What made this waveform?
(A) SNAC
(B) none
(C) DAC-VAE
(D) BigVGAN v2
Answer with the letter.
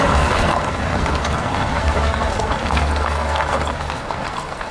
A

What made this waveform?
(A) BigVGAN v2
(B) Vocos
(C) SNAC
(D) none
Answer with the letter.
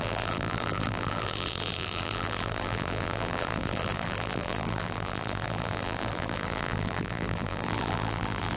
A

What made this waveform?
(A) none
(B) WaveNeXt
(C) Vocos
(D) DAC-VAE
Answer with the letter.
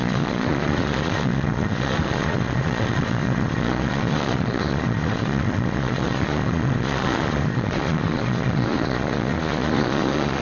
C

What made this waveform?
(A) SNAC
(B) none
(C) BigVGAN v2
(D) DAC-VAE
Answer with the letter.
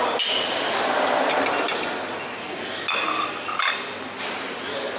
B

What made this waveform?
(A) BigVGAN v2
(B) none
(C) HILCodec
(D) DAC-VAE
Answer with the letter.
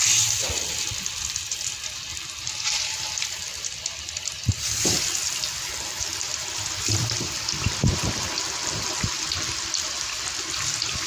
A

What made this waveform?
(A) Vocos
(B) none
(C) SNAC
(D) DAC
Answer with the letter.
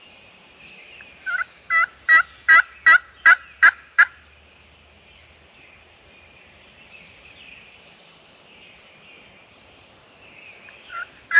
B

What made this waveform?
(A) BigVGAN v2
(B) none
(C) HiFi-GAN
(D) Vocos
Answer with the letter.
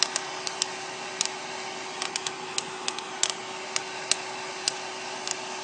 B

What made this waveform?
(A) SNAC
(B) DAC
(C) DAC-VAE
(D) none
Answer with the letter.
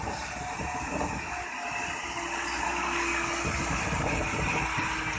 D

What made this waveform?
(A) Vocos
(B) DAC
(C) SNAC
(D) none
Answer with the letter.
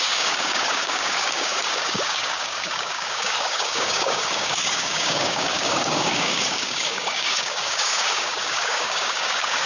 B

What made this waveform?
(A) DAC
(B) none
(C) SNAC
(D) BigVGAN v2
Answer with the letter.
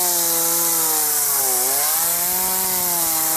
B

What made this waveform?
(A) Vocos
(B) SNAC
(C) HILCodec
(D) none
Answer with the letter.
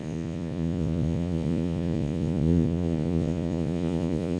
A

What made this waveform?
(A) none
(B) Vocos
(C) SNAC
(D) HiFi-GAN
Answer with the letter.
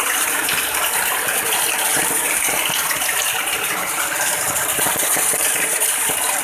A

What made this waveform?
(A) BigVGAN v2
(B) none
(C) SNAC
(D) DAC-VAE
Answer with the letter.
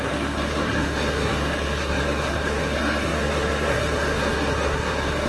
C